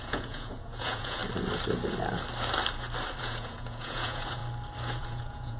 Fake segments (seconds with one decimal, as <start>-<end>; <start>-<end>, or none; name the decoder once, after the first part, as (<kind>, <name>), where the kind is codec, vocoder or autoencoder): 0.0-1.2 (vocoder, Vocos); 3.2-4.4; 5.0-5.6